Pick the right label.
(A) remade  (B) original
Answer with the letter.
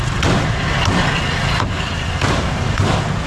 B